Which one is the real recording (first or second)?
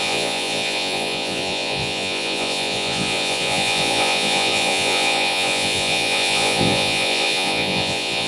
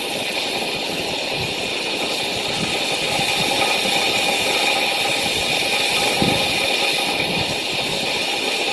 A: second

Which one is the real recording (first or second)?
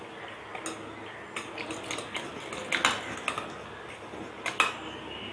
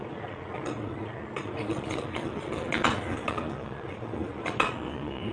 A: first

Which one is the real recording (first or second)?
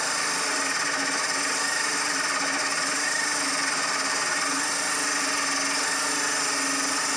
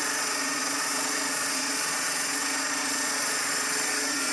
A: first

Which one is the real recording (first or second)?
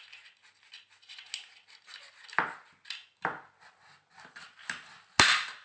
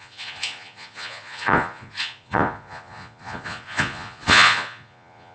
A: first